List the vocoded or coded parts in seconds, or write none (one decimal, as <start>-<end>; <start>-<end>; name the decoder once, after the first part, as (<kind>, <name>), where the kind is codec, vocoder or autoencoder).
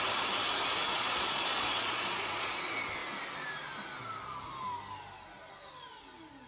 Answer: 0.9-2.6 (vocoder, Vocos)